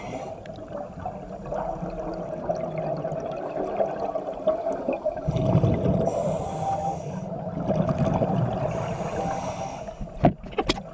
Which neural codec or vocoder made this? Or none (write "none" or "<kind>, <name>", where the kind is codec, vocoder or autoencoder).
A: none